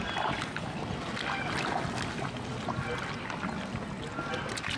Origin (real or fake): real